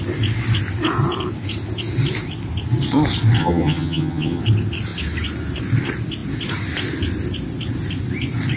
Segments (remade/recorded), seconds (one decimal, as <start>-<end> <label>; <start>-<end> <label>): 0.0-3.4 recorded; 3.4-4.4 remade; 4.4-8.6 recorded